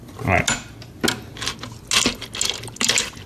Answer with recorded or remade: recorded